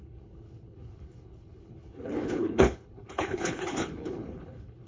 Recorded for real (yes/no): no